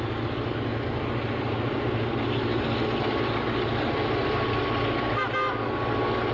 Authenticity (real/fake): real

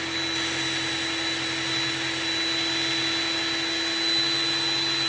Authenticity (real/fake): real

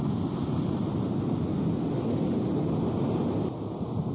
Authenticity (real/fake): real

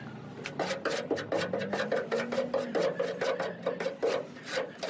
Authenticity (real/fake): real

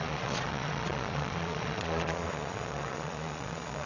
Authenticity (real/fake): fake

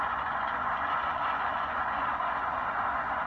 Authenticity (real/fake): fake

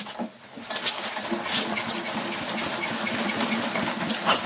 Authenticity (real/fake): real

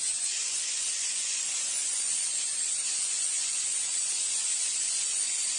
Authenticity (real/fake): fake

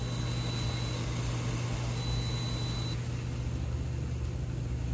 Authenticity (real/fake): real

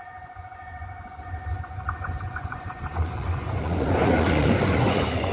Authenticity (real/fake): fake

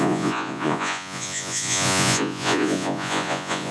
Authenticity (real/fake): fake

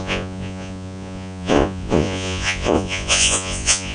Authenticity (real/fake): fake